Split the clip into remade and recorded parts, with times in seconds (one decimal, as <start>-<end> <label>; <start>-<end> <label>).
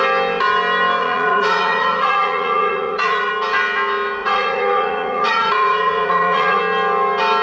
0.0-1.0 recorded; 1.0-3.3 remade; 3.3-4.2 recorded; 4.2-6.6 remade; 6.6-7.4 recorded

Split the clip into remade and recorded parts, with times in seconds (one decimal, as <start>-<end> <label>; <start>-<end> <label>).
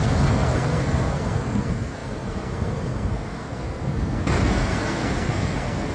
0.0-5.9 remade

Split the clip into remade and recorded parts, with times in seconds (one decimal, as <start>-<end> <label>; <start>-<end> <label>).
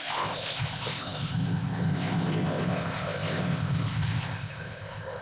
0.0-5.2 remade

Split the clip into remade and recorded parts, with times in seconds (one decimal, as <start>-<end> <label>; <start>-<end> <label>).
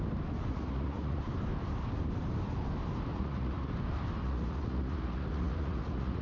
0.0-0.5 recorded; 0.5-1.2 remade; 1.2-3.1 recorded; 3.1-3.7 remade; 3.7-4.2 recorded; 4.2-6.2 remade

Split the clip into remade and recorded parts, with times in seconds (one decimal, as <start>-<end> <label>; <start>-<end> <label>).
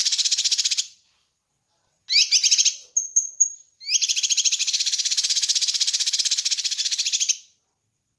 0.0-8.2 recorded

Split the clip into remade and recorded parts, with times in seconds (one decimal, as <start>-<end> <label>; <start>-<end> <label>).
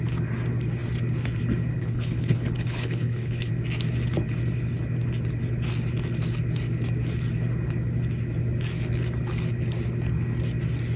0.0-1.8 recorded; 1.8-3.5 remade; 3.5-11.0 recorded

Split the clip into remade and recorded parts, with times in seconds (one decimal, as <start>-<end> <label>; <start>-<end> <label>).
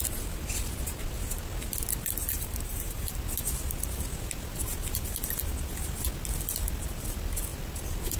0.0-2.2 recorded; 2.2-3.2 remade; 3.2-8.2 recorded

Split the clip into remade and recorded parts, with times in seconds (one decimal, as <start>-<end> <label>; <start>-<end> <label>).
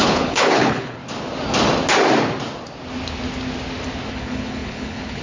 0.0-1.0 remade; 1.0-4.1 recorded; 4.1-5.2 remade